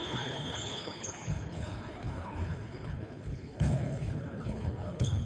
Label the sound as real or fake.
fake